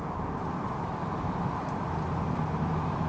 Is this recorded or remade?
recorded